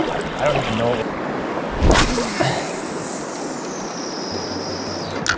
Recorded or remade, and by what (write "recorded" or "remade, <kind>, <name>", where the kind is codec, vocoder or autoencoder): recorded